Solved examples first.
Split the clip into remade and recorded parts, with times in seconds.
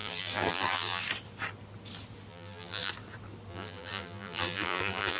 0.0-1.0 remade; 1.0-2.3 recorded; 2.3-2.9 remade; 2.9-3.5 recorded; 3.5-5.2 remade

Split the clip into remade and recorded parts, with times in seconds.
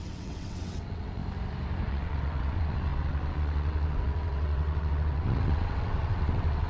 0.0-1.2 remade; 1.2-1.9 recorded; 1.9-6.7 remade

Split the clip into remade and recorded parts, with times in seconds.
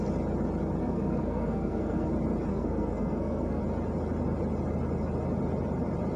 0.0-0.8 recorded; 0.8-2.1 remade; 2.1-2.5 recorded; 2.5-3.6 remade; 3.6-6.2 recorded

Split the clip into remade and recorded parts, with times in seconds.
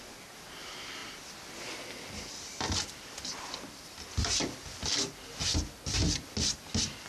0.0-7.1 recorded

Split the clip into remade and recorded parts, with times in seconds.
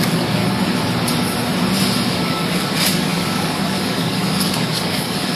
0.0-0.4 remade; 0.4-2.1 recorded; 2.1-5.4 remade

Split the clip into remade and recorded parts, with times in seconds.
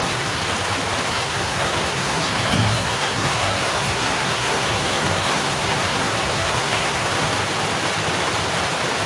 0.0-0.4 remade; 0.4-1.1 recorded; 1.1-7.3 remade; 7.3-9.1 recorded